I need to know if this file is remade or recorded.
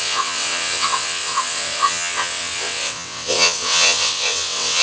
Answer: remade